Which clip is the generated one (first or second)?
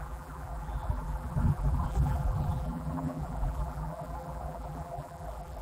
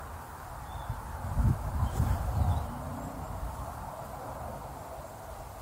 first